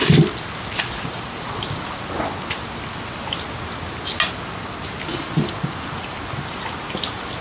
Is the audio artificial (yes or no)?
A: no